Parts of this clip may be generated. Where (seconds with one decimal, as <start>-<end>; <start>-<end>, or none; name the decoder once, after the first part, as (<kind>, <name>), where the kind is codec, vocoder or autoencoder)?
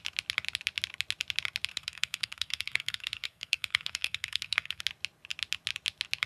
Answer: 1.7-4.8 (codec, SNAC)